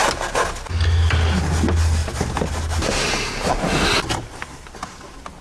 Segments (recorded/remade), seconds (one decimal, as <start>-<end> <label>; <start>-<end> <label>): 0.0-5.4 recorded

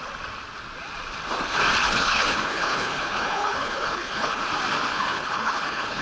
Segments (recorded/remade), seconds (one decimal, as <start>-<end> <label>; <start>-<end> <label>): 0.0-1.8 recorded; 1.8-4.4 remade; 4.4-4.9 recorded; 4.9-6.0 remade